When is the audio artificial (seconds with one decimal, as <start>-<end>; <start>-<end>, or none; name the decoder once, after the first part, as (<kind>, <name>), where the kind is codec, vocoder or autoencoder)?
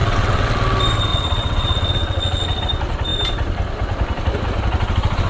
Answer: 0.0-0.5 (vocoder, WaveNeXt); 1.1-2.6